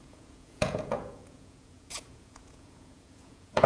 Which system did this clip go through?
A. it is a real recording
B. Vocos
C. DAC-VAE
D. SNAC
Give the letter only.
B